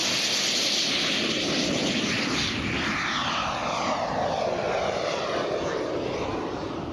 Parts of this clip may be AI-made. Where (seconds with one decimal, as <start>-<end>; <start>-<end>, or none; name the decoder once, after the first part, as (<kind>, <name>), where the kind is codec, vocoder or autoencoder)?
none